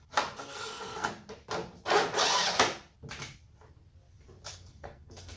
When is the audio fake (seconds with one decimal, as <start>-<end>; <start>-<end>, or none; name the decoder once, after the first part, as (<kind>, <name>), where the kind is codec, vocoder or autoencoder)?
0.4-1.1 (codec, SNAC); 4.5-5.4